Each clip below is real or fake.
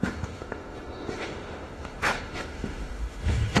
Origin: fake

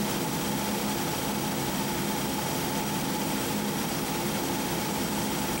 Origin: real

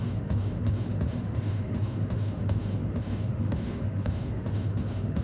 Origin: fake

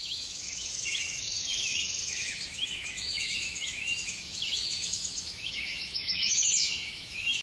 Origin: fake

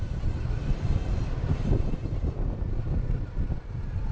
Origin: real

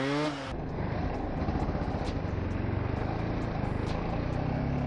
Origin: real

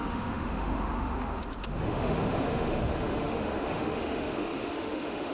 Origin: fake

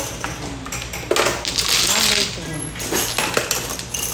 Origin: real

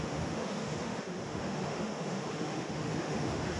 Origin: fake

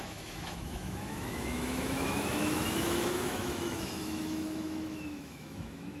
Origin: fake